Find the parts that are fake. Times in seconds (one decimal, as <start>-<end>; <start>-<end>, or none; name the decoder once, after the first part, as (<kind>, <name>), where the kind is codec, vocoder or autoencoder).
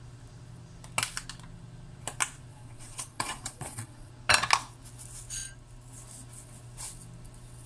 2.5-4.1 (vocoder, Vocos)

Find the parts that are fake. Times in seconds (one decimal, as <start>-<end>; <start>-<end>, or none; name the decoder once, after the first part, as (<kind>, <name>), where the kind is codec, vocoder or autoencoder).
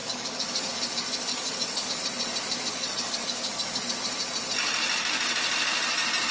0.0-0.7 (codec, DAC); 1.3-1.9; 2.7-3.8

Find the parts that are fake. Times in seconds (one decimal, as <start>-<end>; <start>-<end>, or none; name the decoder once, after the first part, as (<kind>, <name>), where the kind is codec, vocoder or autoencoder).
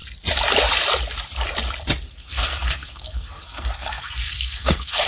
2.1-5.1 (codec, SNAC)